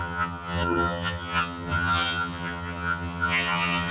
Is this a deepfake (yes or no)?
yes